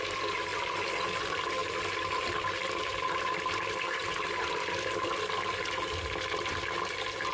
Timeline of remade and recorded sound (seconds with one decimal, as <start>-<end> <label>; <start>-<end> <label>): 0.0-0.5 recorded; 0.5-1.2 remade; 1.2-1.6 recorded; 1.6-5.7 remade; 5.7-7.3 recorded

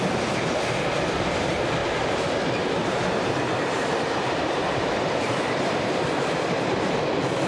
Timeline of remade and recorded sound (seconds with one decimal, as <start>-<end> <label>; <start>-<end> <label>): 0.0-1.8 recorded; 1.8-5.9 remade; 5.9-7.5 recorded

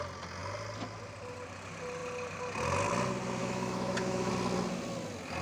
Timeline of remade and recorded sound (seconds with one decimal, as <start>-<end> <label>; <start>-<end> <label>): 0.0-3.4 recorded; 3.4-4.3 remade; 4.3-5.4 recorded

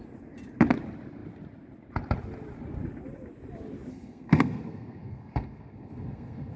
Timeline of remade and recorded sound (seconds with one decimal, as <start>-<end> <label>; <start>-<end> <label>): 0.0-3.9 recorded; 3.9-6.6 remade

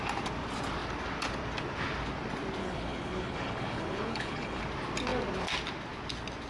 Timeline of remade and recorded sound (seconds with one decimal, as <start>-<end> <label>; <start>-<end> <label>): 0.0-2.6 recorded; 2.6-4.6 remade; 4.6-6.5 recorded

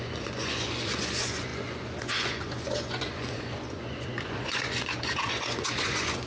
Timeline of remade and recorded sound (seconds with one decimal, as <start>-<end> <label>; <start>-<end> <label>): 0.0-6.3 remade

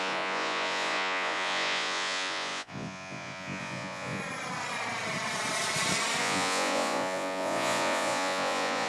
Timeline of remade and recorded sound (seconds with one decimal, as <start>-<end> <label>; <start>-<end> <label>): 0.0-4.2 remade; 4.2-6.2 recorded; 6.2-8.9 remade

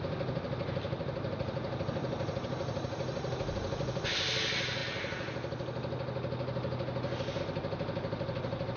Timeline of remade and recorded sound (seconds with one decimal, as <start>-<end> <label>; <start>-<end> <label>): 0.0-8.8 recorded